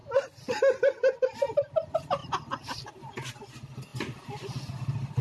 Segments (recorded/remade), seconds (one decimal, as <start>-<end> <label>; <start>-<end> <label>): 0.0-5.2 recorded